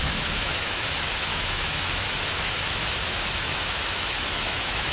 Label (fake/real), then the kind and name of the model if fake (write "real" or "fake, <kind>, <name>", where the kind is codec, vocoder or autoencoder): fake, autoencoder, DAC-VAE